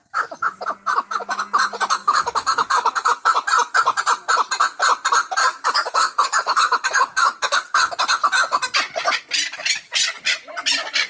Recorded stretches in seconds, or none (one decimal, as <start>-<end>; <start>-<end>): 0.0-2.0; 3.2-5.4; 7.9-11.1